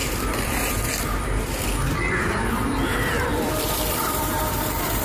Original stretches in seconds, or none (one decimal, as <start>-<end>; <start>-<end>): none